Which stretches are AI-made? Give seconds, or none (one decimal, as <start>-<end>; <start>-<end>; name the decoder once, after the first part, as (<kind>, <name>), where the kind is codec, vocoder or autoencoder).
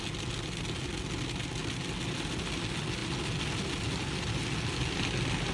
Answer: none